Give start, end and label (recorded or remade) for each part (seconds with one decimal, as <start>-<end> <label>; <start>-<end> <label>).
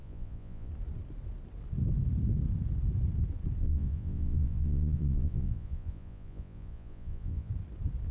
0.0-0.7 remade; 0.7-3.6 recorded; 3.6-7.5 remade; 7.5-8.1 recorded